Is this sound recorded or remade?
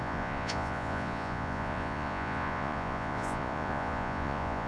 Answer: remade